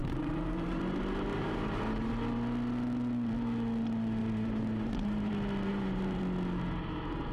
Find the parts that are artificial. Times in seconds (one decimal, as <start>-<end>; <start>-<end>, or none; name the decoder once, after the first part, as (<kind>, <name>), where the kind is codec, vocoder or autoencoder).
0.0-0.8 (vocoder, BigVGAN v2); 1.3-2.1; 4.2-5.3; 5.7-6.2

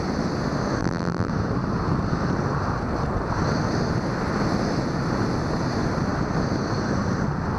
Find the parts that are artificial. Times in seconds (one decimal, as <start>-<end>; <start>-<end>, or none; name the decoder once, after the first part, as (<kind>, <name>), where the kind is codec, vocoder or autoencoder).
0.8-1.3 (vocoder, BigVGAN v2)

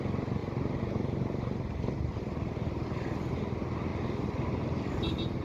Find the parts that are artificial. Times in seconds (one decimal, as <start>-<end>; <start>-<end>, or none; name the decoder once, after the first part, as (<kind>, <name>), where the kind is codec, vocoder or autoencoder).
none